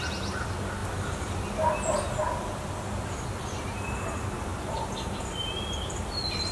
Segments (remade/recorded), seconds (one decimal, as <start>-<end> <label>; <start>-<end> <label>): 0.0-6.5 recorded